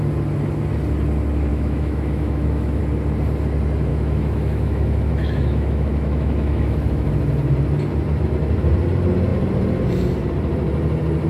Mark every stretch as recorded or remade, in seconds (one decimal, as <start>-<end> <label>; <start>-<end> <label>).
0.0-1.5 recorded; 1.5-2.8 remade; 2.8-3.9 recorded; 3.9-7.1 remade; 7.1-11.3 recorded